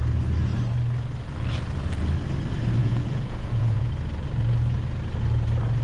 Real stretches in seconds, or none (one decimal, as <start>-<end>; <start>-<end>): 0.0-2.8; 3.9-5.8